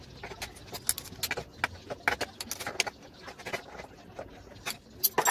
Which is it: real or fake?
real